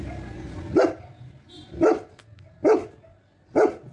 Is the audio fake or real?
real